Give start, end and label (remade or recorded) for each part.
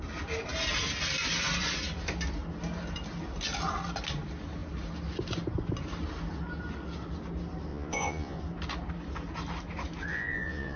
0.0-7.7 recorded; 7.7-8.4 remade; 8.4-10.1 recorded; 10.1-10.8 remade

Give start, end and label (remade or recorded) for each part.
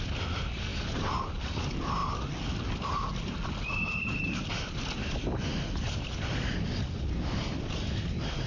0.0-8.5 recorded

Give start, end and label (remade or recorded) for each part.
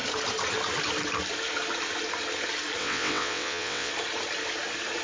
0.0-2.8 recorded; 2.8-3.9 remade; 3.9-5.0 recorded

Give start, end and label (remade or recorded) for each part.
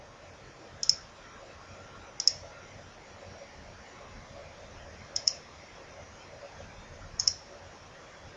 0.0-4.4 recorded; 4.4-7.6 remade; 7.6-8.4 recorded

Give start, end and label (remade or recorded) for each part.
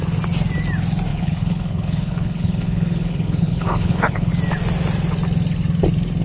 0.0-1.1 recorded; 1.1-4.3 remade; 4.3-6.2 recorded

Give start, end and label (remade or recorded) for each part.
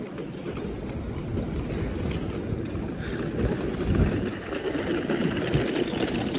0.0-6.4 recorded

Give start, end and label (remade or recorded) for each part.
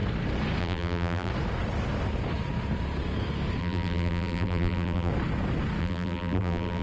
0.0-0.6 recorded; 0.6-1.3 remade; 1.3-3.6 recorded; 3.6-5.1 remade; 5.1-5.8 recorded; 5.8-6.8 remade